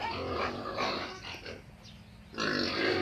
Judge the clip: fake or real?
real